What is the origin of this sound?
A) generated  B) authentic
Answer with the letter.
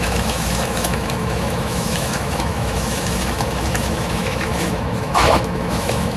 A